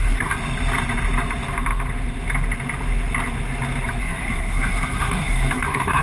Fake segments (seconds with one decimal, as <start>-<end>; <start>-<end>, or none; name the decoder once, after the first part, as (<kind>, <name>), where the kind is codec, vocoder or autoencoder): 0.0-0.4 (codec, SNAC); 4.0-6.0